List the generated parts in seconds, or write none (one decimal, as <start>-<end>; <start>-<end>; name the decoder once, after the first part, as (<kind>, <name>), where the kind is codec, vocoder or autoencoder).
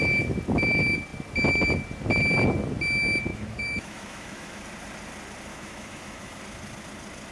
3.3-4.6 (autoencoder, DAC-VAE); 5.5-6.4